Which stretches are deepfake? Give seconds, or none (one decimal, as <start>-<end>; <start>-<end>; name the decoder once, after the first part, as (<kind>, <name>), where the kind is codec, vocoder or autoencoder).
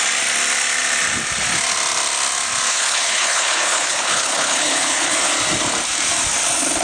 2.7-5.3 (codec, HILCodec)